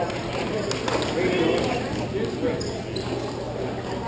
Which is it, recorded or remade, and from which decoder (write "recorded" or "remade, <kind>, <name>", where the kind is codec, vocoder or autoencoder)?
recorded